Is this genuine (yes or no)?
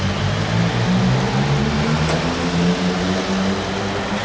yes